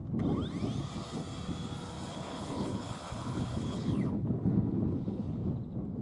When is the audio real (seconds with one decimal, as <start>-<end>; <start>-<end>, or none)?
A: 0.0-2.1; 5.4-6.0